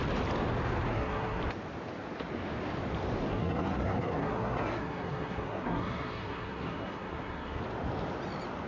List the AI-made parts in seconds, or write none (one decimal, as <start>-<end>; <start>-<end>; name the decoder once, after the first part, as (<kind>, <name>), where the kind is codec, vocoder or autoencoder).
0.9-1.4 (codec, SNAC); 3.3-7.6